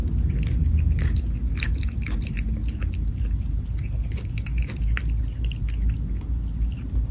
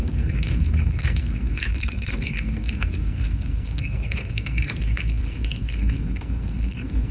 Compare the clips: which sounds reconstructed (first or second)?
second